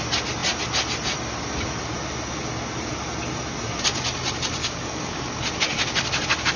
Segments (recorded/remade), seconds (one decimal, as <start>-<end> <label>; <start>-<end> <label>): 0.0-4.6 recorded; 4.6-5.3 remade; 5.3-6.6 recorded